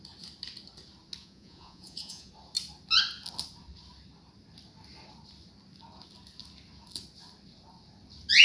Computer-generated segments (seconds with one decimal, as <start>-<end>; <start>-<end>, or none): 1.2-2.3